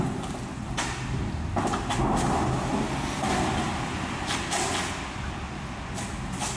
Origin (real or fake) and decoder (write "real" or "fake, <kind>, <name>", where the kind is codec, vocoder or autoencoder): real